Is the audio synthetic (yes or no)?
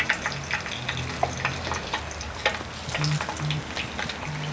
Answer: no